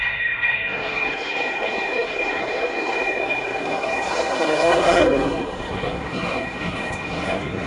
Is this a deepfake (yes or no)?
yes